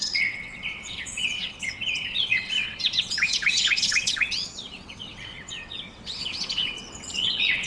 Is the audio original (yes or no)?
no